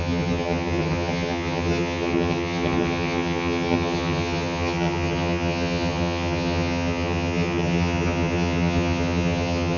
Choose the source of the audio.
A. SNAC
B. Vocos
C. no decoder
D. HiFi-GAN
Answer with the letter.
D